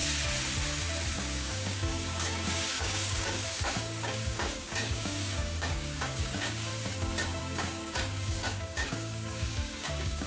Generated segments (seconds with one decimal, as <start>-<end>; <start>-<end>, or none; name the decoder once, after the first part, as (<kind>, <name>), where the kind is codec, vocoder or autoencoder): 1.1-6.7 (codec, DAC); 7.4-10.3